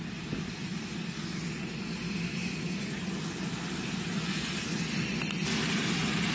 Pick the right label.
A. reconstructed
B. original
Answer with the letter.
B